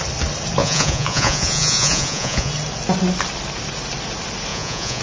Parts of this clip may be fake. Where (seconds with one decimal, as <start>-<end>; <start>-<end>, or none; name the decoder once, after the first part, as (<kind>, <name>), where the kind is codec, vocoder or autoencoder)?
0.6-2.5 (vocoder, Vocos); 4.5-5.0